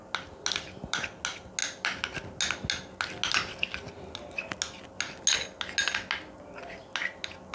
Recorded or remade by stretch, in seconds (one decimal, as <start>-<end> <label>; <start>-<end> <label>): 0.0-7.5 recorded